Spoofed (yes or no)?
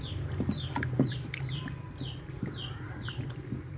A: yes